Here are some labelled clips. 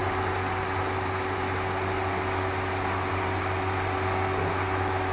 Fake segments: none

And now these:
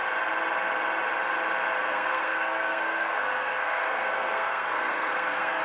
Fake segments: 1.9-5.6 (codec, SNAC)

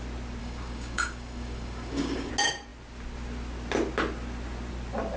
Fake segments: 0.4-2.3 (codec, DAC)

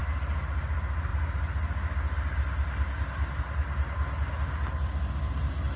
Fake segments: none